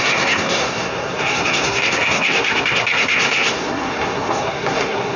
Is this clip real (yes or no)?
no